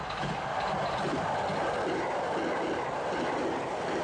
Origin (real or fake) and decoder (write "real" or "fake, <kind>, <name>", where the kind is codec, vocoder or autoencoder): real